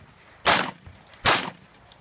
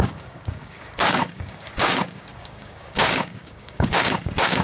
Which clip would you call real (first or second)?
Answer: first